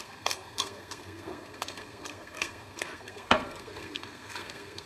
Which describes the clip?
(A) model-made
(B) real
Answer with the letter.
A